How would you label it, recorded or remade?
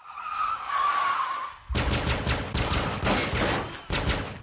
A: recorded